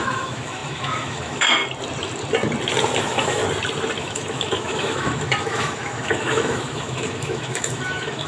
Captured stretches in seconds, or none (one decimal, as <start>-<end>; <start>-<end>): 1.6-3.0; 3.4-4.0